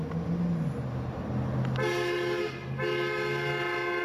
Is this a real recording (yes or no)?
yes